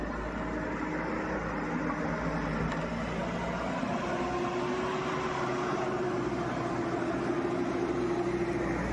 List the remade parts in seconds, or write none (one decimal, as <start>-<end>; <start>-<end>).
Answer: none